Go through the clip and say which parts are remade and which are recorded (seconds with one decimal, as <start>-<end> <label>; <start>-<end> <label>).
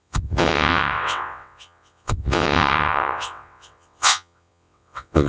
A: 0.0-5.3 remade